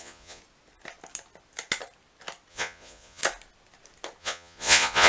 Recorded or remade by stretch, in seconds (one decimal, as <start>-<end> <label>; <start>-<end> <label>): 0.0-0.4 remade; 0.4-2.5 recorded; 2.5-3.2 remade; 3.2-4.2 recorded; 4.2-5.1 remade